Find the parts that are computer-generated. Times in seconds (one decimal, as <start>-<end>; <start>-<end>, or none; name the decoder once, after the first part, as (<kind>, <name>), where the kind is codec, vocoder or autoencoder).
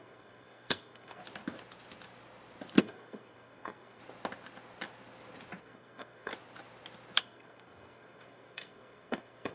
0.0-1.2 (codec, SNAC); 2.8-4.0; 5.6-6.3; 7.2-9.5